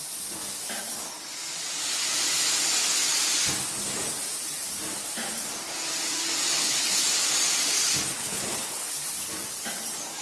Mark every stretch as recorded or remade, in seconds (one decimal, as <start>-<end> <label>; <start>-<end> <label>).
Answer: 0.0-6.6 recorded; 6.6-7.1 remade; 7.1-8.1 recorded; 8.1-8.9 remade; 8.9-10.2 recorded